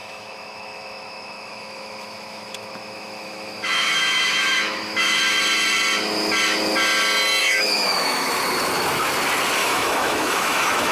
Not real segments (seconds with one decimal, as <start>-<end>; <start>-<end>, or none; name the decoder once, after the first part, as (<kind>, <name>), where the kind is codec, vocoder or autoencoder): 0.0-5.2 (autoencoder, DAC-VAE); 7.4-8.3; 9.6-10.9